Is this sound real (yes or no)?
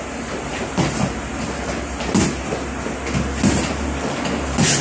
yes